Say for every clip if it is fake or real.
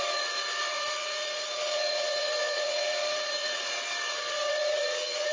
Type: fake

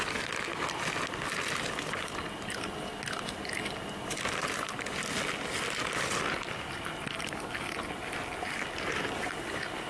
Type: real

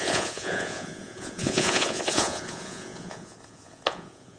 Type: fake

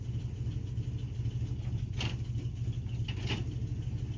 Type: real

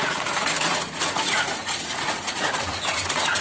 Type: fake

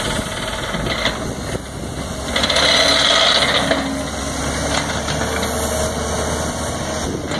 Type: real